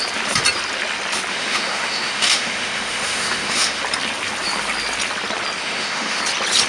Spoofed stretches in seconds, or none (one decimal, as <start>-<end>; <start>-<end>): 1.3-3.8; 5.6-6.2

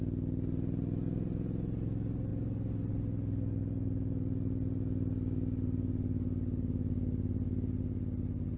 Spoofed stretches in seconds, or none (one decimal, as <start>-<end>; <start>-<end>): none